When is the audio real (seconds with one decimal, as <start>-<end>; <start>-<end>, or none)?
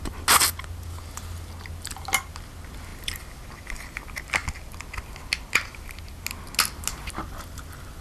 0.0-8.0